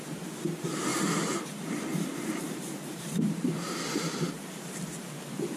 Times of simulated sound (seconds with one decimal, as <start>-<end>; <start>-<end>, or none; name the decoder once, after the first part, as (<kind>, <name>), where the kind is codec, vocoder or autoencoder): 0.9-4.3 (vocoder, BigVGAN v2)